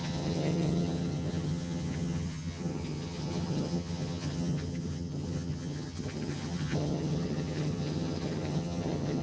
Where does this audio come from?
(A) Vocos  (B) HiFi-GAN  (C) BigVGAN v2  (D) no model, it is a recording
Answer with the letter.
B